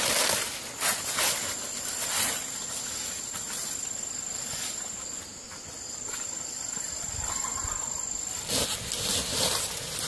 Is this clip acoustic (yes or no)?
yes